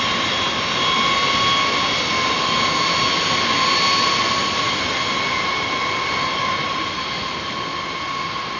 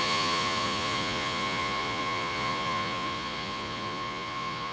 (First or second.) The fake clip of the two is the second